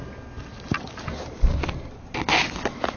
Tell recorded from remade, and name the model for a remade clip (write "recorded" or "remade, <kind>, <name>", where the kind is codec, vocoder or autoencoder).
recorded